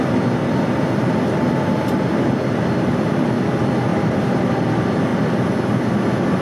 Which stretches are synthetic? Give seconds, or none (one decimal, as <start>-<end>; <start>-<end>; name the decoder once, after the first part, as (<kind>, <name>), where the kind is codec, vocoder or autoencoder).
3.9-4.5 (vocoder, BigVGAN v2)